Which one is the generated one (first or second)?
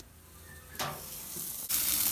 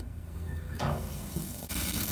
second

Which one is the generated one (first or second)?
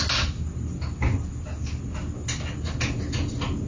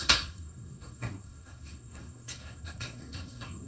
second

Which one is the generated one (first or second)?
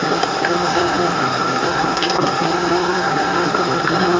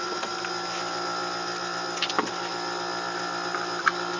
first